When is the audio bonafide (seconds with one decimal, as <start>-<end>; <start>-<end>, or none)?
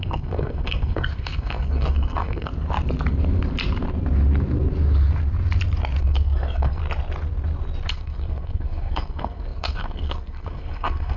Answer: 2.5-6.0; 6.8-7.9